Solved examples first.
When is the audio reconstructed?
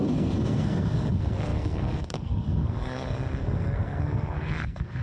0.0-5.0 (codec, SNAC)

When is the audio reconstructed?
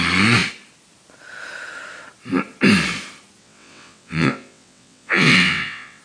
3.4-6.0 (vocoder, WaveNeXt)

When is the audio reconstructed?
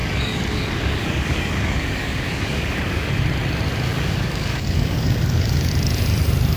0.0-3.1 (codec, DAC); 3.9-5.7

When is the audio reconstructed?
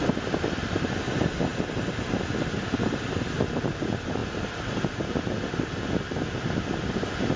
none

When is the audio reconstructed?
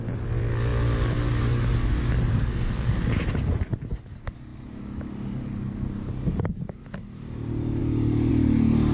2.3-3.0 (codec, SNAC)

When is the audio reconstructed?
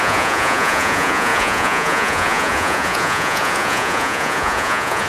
0.0-5.1 (vocoder, Vocos)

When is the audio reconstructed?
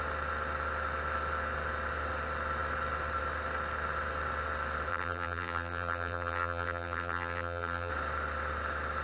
4.9-7.9 (vocoder, BigVGAN v2)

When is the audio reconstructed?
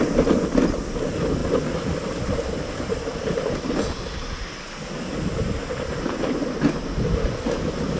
none